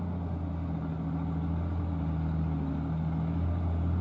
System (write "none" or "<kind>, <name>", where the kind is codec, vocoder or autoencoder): none